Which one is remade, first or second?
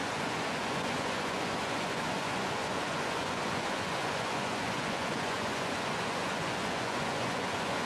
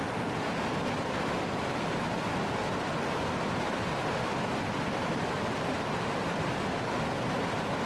first